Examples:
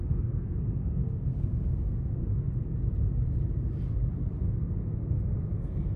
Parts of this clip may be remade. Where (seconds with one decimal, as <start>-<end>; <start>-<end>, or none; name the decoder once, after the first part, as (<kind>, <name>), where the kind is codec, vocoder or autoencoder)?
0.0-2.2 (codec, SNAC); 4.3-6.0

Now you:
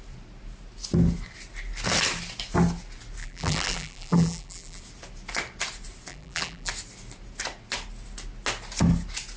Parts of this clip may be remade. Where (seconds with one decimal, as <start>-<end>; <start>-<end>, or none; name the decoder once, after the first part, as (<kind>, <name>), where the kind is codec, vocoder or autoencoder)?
3.2-4.8 (vocoder, BigVGAN v2); 6.1-6.7

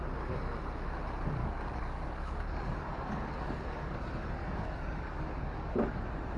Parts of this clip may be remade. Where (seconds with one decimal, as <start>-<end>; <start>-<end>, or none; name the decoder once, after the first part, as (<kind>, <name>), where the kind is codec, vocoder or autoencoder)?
1.4-4.0 (codec, DAC); 4.4-6.0

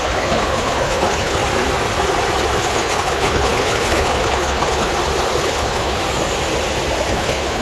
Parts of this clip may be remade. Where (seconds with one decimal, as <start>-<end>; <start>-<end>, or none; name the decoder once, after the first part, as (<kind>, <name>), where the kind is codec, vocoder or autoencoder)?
0.0-1.4 (codec, HILCodec); 2.6-4.9; 5.4-6.0; 7.1-7.6

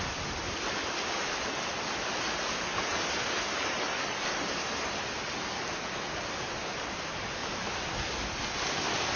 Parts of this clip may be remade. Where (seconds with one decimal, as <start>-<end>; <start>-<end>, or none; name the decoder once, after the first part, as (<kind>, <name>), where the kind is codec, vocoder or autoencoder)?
none